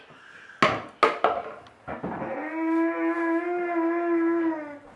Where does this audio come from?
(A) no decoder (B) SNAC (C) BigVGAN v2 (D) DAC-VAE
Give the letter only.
A